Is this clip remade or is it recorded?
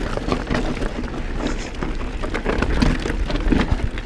recorded